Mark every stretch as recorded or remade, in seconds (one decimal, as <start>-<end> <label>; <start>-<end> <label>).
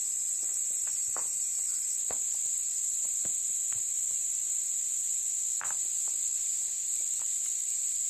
0.0-4.9 remade; 4.9-5.8 recorded; 5.8-6.5 remade; 6.5-8.1 recorded